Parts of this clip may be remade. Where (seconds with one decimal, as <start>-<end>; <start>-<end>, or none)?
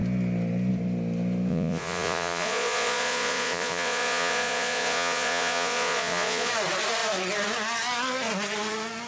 1.5-6.5